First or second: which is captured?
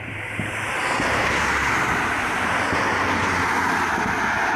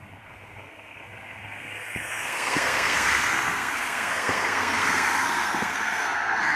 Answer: first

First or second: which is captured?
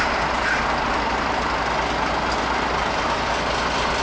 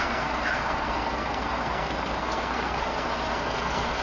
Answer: first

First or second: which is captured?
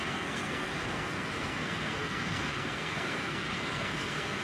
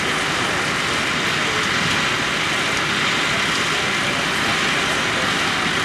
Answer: second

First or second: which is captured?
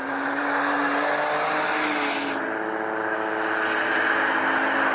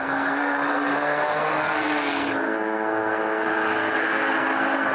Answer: first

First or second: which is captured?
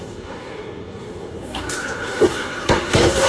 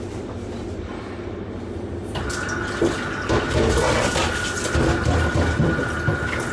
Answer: second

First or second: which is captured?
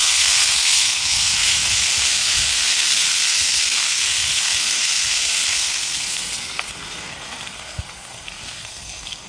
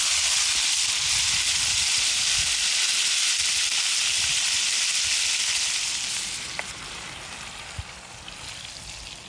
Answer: second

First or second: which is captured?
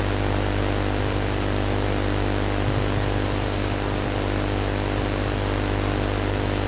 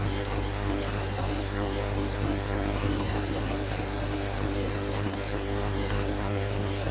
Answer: first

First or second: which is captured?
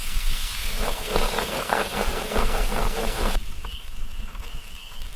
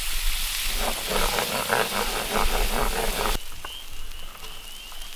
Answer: second